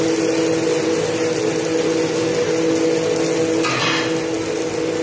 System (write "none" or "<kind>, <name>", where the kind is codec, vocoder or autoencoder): none